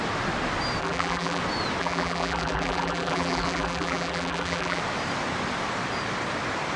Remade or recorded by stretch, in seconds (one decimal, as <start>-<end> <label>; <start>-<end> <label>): 0.0-0.8 recorded; 0.8-1.4 remade; 1.4-1.8 recorded; 1.8-4.8 remade; 4.8-6.8 recorded